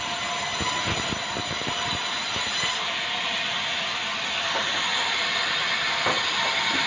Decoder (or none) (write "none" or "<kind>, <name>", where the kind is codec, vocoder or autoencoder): none